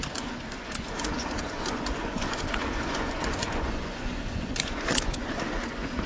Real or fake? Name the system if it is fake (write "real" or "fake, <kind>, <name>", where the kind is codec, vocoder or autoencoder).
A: fake, vocoder, Vocos